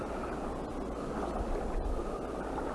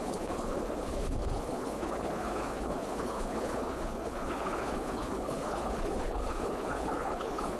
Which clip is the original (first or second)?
first